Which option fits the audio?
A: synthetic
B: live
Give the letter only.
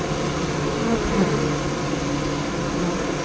B